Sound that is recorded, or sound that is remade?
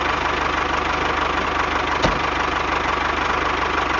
recorded